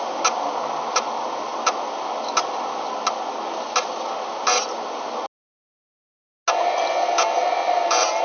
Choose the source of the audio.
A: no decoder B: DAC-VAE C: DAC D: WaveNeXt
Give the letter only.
A